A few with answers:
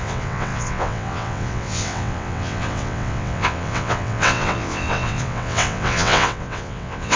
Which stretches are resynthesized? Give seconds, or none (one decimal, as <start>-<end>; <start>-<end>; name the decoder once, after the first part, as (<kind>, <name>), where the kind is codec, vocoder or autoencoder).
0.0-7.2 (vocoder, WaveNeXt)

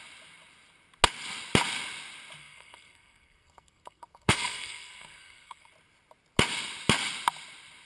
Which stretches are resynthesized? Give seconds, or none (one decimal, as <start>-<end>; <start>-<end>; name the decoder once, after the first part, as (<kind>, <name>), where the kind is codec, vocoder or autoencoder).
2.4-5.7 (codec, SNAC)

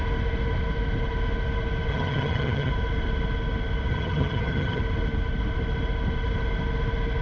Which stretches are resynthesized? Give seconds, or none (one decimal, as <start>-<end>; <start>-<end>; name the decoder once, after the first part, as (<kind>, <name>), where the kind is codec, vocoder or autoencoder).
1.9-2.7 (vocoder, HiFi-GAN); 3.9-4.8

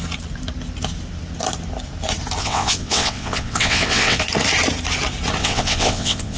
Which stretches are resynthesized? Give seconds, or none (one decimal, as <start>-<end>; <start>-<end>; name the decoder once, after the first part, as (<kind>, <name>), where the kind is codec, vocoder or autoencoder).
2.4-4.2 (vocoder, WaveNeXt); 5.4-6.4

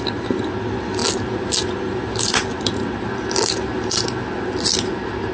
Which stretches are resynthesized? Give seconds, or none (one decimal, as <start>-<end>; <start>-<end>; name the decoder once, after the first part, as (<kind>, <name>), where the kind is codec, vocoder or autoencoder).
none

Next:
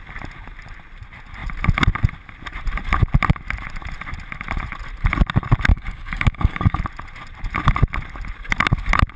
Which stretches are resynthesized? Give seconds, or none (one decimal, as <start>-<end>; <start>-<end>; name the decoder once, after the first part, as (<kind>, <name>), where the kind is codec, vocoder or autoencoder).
5.7-6.8 (codec, DAC)